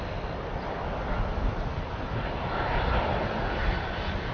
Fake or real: real